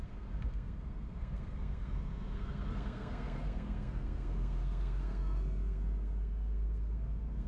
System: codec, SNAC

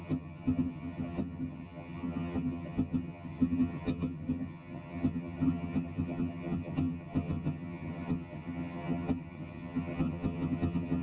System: vocoder, HiFi-GAN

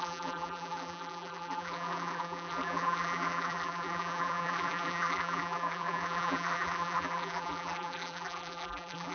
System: vocoder, BigVGAN v2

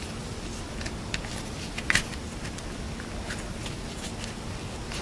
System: none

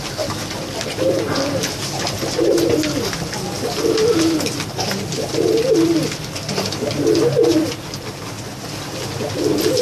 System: none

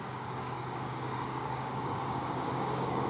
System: codec, DAC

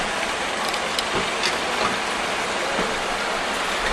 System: none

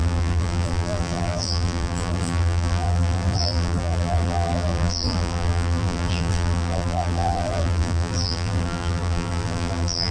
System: vocoder, BigVGAN v2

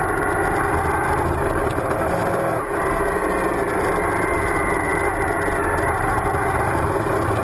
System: none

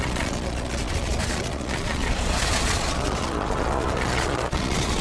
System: vocoder, Vocos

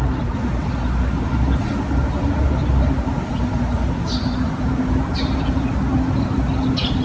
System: none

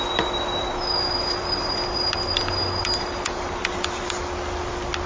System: none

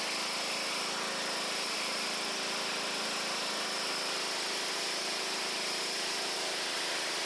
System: none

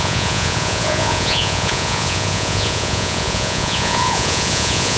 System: vocoder, Vocos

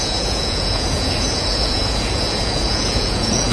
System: vocoder, Vocos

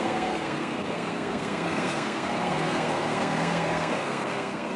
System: codec, SNAC